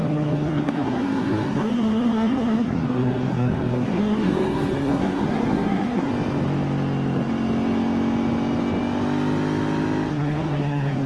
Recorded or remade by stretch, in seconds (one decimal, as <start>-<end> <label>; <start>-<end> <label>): 0.0-6.1 remade; 6.1-10.1 recorded; 10.1-11.1 remade